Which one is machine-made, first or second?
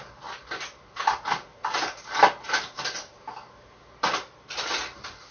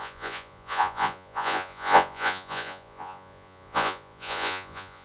second